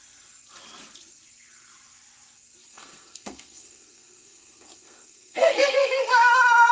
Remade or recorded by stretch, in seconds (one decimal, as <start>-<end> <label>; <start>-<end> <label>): 0.0-2.7 recorded; 2.7-6.7 remade